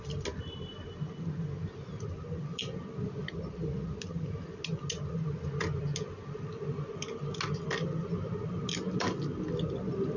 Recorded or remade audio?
recorded